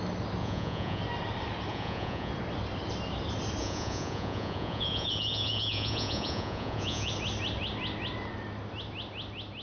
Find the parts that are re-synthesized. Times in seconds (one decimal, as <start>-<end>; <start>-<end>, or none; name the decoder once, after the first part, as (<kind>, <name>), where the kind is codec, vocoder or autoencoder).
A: 0.4-1.0 (vocoder, Vocos); 1.7-2.3; 3.6-7.1

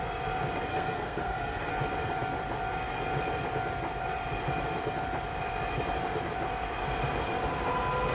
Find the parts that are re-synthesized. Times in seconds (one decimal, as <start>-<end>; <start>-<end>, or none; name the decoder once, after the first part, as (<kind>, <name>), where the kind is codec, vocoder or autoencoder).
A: 0.7-1.7 (codec, SNAC)

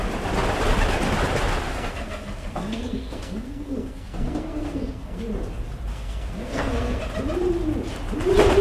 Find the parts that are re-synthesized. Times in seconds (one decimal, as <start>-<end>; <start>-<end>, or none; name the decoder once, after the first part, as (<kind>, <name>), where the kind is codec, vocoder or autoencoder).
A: 1.7-5.2 (codec, SNAC); 5.9-7.0

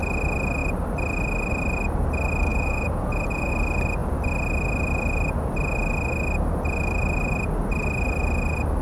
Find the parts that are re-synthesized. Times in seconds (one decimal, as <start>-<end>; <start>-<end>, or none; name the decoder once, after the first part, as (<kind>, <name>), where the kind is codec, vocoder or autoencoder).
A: 2.5-3.5 (vocoder, Vocos)

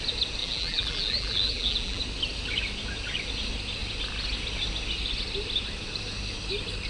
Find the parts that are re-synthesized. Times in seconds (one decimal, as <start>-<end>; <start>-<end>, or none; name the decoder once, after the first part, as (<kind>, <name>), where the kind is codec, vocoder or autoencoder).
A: 0.4-2.0 (vocoder, BigVGAN v2)